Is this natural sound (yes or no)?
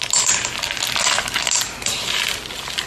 yes